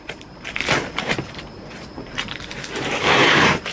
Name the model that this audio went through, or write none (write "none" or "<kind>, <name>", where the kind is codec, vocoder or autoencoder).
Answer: vocoder, BigVGAN v2